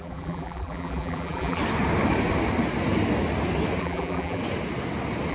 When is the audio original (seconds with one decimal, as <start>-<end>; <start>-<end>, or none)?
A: 1.6-3.8; 4.4-5.3